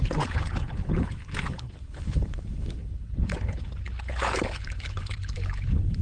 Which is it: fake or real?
fake